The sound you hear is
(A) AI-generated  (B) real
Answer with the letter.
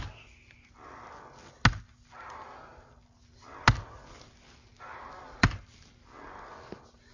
B